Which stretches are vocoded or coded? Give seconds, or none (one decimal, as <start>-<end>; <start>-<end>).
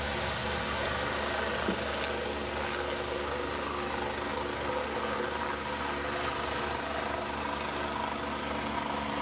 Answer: none